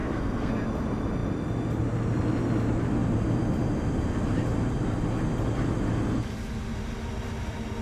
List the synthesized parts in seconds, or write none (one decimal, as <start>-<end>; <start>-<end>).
0.0-0.5